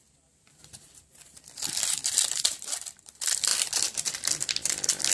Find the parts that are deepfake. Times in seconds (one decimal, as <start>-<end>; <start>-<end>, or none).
0.0-5.1